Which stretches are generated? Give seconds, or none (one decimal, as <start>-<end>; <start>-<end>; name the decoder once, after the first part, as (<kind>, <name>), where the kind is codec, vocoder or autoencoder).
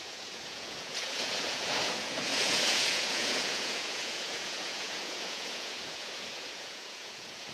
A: 0.0-7.5 (vocoder, Vocos)